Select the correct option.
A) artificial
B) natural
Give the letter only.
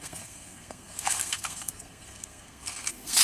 A